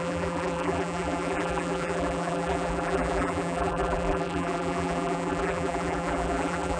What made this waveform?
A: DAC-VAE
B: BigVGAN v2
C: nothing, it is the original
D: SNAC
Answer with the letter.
B